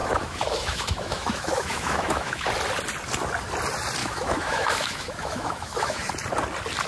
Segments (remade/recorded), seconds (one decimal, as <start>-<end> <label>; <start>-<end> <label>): 0.0-2.5 remade; 2.5-4.0 recorded; 4.0-6.1 remade; 6.1-6.9 recorded